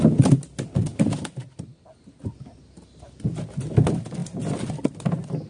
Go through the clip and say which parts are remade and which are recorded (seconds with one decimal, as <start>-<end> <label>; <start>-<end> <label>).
0.0-5.5 recorded